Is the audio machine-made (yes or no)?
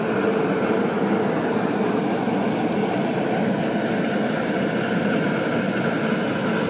no